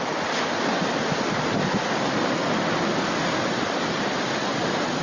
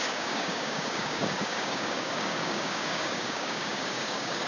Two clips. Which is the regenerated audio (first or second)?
second